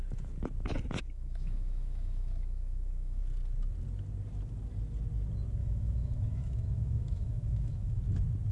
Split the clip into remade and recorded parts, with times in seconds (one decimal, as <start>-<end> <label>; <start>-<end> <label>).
0.0-1.0 recorded; 1.0-3.2 remade; 3.2-5.6 recorded; 5.6-8.0 remade; 8.0-8.5 recorded